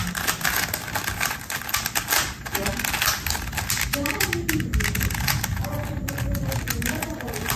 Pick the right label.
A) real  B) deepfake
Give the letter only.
A